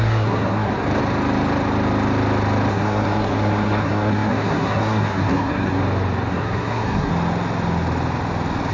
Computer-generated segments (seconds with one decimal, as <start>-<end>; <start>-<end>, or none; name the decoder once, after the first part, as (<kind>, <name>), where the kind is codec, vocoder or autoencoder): 0.0-0.7 (codec, SNAC); 2.7-5.8; 6.3-7.1